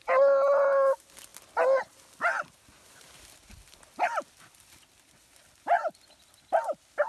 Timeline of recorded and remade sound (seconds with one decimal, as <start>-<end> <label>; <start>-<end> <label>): 0.0-7.1 recorded